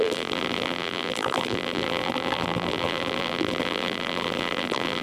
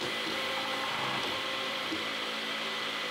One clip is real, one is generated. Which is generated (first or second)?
first